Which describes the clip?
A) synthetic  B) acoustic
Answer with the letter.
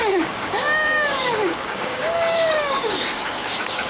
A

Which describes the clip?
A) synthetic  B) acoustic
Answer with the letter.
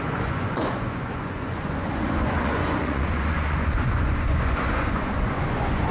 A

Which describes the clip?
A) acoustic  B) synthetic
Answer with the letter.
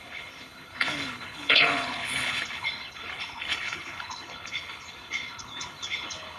B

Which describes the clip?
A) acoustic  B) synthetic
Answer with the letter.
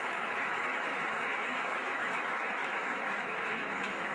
B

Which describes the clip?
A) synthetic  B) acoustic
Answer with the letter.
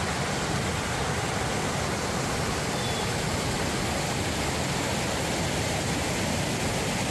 B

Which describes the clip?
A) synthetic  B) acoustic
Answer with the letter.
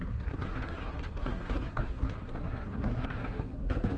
A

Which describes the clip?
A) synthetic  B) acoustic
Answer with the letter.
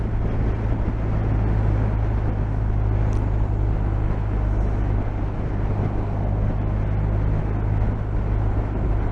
B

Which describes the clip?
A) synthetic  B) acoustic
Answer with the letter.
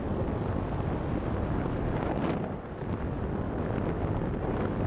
B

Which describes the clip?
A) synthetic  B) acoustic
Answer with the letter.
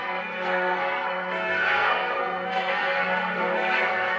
A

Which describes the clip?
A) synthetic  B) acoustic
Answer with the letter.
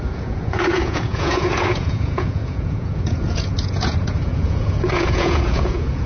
A